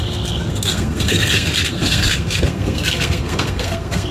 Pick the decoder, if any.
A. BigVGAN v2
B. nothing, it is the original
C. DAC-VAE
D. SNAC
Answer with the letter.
D